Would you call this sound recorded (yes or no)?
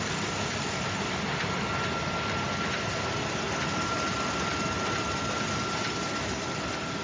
yes